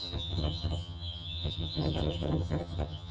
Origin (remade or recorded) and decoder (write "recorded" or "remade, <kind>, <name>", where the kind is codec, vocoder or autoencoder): remade, vocoder, HiFi-GAN